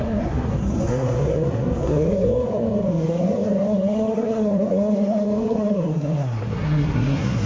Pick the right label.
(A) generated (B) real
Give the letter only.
A